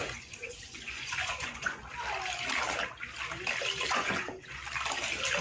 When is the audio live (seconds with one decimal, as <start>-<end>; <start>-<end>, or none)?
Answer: 1.8-3.9; 4.6-5.4